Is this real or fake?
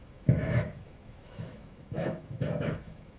fake